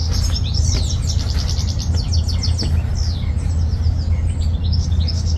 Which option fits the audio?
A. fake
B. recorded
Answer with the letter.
B